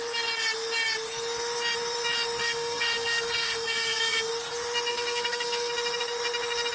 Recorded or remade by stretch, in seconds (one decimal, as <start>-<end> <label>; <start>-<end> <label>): 0.0-2.4 recorded; 2.4-4.3 remade; 4.3-4.9 recorded; 4.9-5.7 remade; 5.7-6.7 recorded